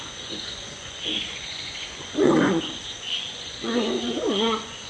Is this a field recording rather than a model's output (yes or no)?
no